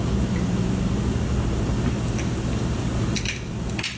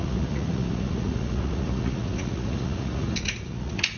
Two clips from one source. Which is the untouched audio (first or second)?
first